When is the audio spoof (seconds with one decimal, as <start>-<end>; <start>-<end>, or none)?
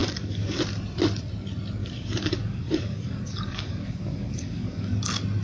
0.0-0.6; 1.8-5.0